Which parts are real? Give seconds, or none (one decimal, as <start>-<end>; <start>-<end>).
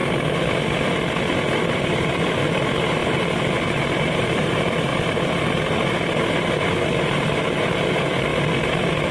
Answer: 0.0-1.8; 4.9-6.7; 8.3-9.1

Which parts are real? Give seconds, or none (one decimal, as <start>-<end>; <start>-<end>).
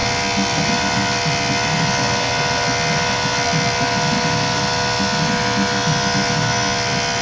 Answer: 0.0-7.2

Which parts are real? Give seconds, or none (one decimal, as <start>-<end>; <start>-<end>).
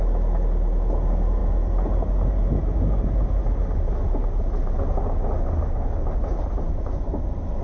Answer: 0.0-7.6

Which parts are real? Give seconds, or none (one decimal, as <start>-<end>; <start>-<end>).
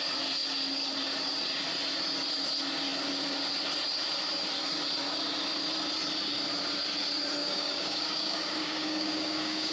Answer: 0.0-7.4